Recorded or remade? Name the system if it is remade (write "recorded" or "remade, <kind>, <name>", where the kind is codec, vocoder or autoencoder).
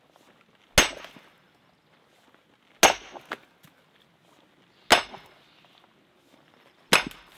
recorded